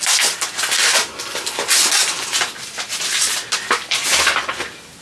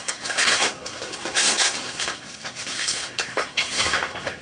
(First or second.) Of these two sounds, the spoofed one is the second